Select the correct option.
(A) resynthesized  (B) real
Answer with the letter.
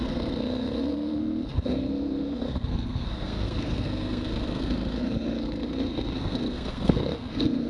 A